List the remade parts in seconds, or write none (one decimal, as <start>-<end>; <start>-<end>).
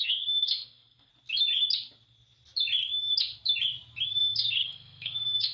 0.0-1.1; 4.2-5.5